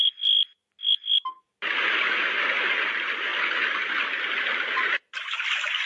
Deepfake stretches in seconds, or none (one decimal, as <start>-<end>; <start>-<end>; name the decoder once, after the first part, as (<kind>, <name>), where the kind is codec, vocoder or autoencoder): none